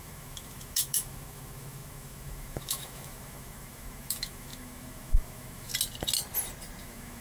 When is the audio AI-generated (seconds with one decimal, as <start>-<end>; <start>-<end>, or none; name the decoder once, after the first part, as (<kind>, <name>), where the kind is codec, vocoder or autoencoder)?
0.0-5.7 (autoencoder, DAC-VAE); 6.8-7.2